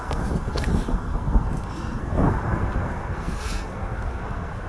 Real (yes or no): no